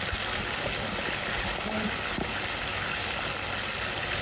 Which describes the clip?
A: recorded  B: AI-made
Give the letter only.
A